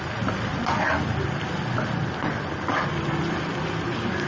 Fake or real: fake